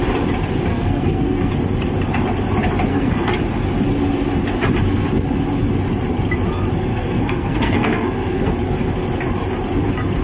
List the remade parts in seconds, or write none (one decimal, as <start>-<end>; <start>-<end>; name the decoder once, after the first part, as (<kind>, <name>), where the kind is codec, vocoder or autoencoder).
0.7-1.5 (codec, SNAC); 2.9-3.4; 6.9-8.5